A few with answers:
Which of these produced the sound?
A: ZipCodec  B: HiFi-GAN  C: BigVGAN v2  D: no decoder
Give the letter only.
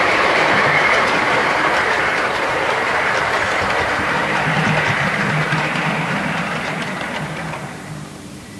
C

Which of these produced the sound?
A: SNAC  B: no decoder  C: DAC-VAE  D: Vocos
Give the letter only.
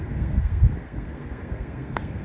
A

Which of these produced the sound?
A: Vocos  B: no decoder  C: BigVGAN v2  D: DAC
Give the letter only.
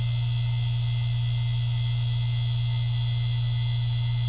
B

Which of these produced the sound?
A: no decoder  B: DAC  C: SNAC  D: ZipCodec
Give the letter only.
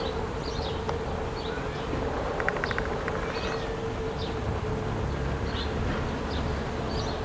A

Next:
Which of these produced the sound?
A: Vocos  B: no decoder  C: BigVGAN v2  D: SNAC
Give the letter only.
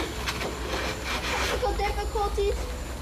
B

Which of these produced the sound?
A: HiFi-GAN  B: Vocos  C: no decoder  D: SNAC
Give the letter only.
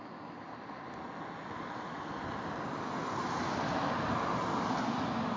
C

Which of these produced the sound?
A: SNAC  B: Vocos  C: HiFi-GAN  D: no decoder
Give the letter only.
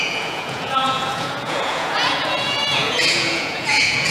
B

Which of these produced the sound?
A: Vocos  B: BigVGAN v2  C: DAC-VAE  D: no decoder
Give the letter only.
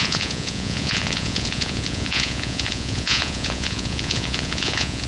A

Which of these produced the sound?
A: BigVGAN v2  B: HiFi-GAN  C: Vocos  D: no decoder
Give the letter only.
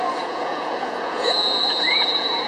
C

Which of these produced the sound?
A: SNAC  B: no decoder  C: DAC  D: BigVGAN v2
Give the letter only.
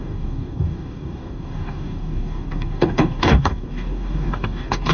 C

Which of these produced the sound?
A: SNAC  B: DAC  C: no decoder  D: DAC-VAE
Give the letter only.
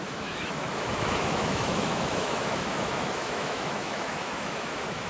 D